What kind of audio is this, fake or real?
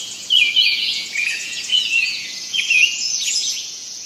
fake